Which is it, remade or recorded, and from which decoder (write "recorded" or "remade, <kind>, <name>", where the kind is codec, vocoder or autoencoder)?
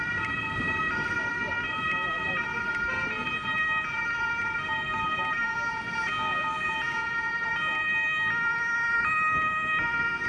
recorded